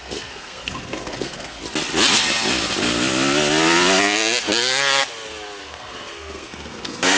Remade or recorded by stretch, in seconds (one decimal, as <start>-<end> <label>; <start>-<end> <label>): 0.0-1.6 remade; 1.6-5.6 recorded; 5.6-7.2 remade

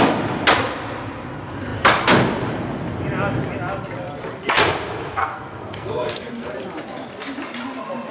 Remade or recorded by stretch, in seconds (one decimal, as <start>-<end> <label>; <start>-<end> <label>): 0.0-5.2 recorded; 5.2-6.5 remade; 6.5-8.1 recorded

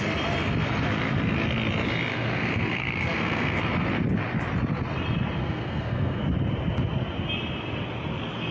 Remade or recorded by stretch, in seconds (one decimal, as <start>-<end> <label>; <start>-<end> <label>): 0.0-2.1 recorded; 2.1-3.6 remade; 3.6-5.4 recorded; 5.4-6.2 remade; 6.2-8.5 recorded

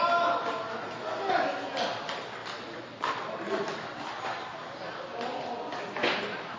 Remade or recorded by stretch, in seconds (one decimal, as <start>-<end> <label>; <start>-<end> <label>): 0.0-0.7 recorded; 0.7-1.3 remade; 1.3-6.6 recorded

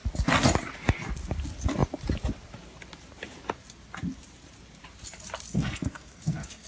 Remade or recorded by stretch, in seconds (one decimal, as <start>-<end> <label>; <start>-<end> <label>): 0.0-5.5 recorded; 5.5-6.7 remade